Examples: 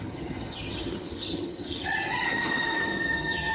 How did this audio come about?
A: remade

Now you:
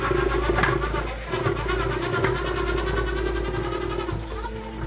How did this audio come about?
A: recorded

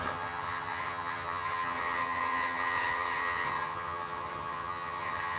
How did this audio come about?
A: remade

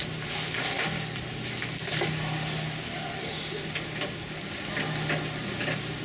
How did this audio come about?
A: recorded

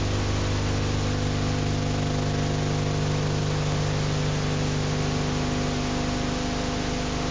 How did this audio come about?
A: recorded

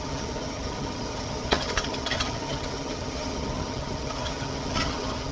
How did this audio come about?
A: remade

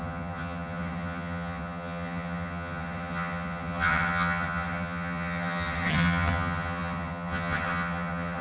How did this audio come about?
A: remade